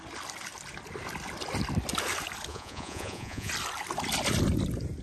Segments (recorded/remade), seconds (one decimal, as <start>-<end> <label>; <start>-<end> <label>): 0.0-2.5 recorded; 2.5-3.5 remade; 3.5-5.0 recorded